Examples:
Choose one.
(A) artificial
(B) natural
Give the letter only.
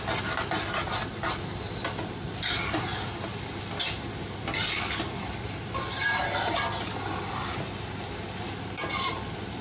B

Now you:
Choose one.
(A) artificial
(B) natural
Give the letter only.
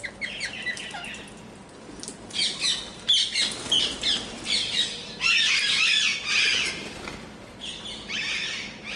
B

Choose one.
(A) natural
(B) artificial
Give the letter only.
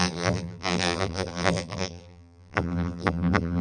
B